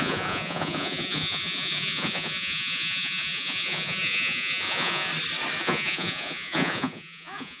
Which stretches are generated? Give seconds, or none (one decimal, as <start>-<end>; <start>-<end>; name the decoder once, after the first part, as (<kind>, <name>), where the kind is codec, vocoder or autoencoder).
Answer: 0.0-5.1 (vocoder, Vocos); 5.6-7.6